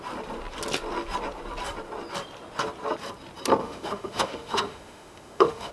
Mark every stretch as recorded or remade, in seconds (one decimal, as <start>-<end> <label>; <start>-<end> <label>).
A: 0.0-3.6 recorded; 3.6-5.7 remade